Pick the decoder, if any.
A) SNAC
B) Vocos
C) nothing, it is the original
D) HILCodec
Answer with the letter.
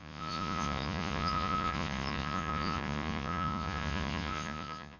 B